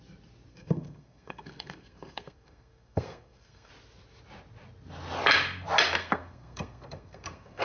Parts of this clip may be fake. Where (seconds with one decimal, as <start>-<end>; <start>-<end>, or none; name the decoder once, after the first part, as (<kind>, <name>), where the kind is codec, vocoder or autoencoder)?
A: 0.5-3.7 (codec, SNAC); 6.0-7.6